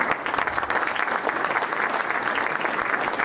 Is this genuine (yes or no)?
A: yes